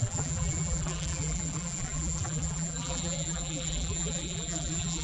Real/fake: fake